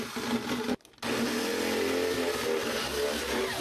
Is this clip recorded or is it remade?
recorded